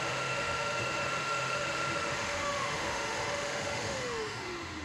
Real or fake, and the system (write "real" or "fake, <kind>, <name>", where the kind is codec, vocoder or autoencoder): fake, autoencoder, DAC-VAE